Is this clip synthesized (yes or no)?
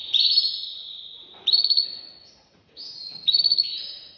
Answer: yes